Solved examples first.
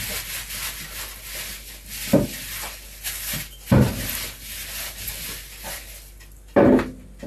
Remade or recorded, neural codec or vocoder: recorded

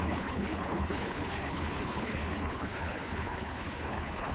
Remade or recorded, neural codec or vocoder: remade, codec, HILCodec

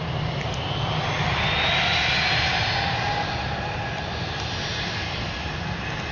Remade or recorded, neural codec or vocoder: recorded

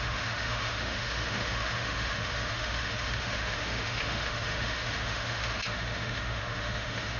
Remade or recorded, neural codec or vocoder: remade, autoencoder, DAC-VAE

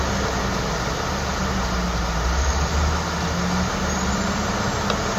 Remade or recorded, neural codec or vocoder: recorded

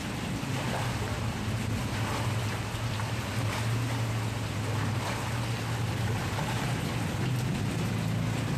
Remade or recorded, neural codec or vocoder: recorded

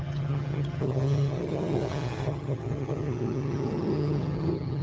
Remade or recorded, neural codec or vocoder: remade, vocoder, HiFi-GAN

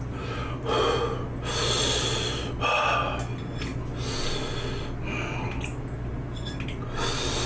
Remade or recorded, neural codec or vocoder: recorded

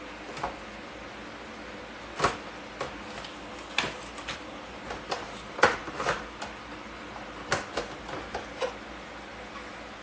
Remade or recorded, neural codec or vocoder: recorded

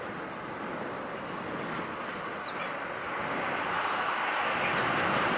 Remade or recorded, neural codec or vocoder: recorded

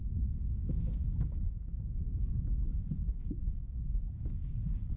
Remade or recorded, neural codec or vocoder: remade, codec, DAC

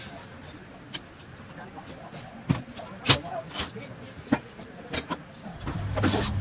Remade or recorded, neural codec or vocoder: recorded